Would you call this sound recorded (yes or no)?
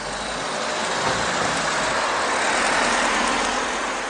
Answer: yes